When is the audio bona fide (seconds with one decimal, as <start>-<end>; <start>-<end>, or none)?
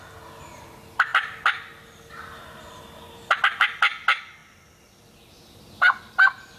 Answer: 0.0-1.1; 2.1-4.4; 6.1-6.6